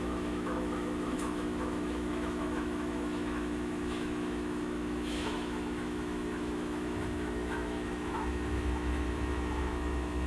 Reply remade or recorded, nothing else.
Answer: remade